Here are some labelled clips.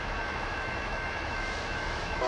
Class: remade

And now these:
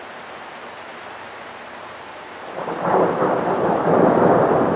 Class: recorded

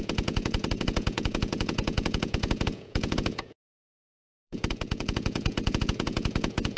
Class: remade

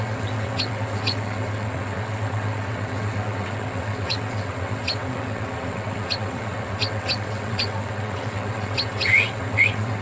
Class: remade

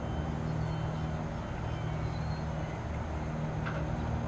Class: recorded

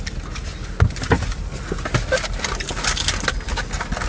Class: recorded